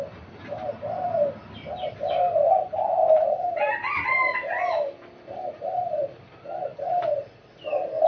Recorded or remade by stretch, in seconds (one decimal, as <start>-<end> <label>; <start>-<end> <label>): 0.0-3.0 recorded; 3.0-6.9 remade; 6.9-8.1 recorded